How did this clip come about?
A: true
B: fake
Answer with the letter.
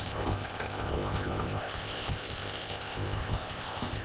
B